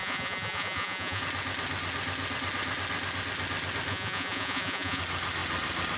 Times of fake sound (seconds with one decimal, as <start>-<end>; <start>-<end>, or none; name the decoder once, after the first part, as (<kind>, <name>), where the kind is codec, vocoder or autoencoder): 0.0-1.2 (vocoder, Vocos); 3.9-5.0